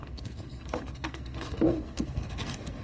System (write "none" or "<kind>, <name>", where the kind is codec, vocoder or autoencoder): codec, SNAC